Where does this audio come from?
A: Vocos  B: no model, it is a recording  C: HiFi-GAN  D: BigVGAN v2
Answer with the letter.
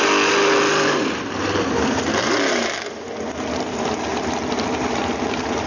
B